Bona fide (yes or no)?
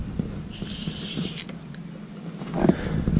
yes